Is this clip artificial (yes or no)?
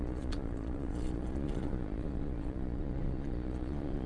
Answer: yes